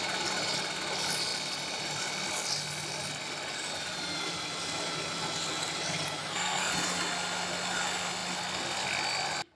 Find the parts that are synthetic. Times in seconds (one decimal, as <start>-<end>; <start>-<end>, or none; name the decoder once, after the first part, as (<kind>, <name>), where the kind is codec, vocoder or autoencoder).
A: 6.2-6.7 (codec, SNAC)